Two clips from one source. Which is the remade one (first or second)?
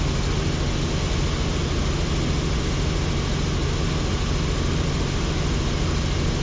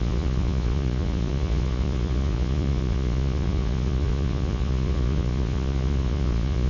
second